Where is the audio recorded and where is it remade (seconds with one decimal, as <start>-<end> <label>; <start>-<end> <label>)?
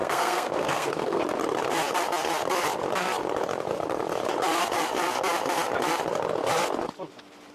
0.0-1.2 remade; 1.2-7.5 recorded